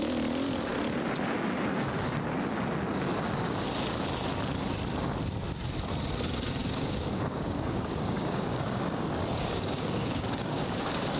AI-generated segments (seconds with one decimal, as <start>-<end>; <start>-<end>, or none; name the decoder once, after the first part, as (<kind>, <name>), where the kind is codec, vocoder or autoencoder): 6.6-11.2 (codec, DAC)